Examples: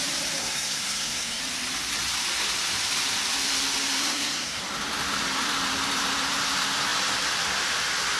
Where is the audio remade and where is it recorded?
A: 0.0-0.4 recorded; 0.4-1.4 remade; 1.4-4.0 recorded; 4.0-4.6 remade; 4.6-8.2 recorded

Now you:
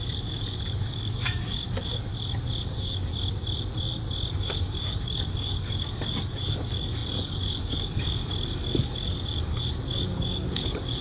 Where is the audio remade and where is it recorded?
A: 0.0-2.1 remade; 2.1-2.6 recorded; 2.6-3.1 remade; 3.1-4.4 recorded; 4.4-11.0 remade

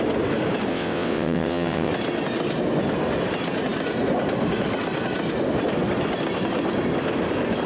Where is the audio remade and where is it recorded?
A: 0.0-0.7 recorded; 0.7-1.9 remade; 1.9-7.7 recorded